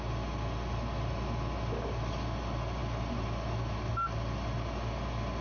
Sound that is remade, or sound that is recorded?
recorded